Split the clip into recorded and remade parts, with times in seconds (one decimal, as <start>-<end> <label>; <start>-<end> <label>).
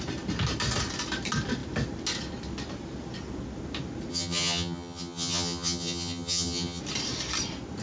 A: 0.0-4.1 recorded; 4.1-6.8 remade; 6.8-7.8 recorded